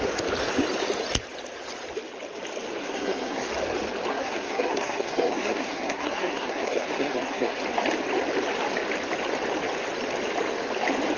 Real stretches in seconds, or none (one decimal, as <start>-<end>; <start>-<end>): 0.0-2.8; 3.5-4.1; 7.6-11.2

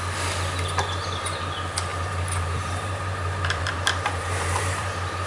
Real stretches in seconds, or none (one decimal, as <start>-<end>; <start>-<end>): 0.0-1.9

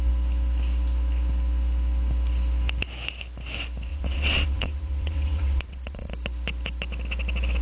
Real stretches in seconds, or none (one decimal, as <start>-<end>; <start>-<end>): 0.0-3.9; 6.1-7.6

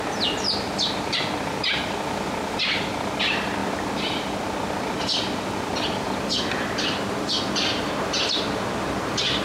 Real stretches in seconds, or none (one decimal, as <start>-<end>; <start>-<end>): 0.0-9.4

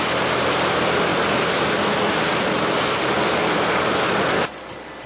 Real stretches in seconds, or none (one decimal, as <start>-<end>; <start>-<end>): 0.0-5.1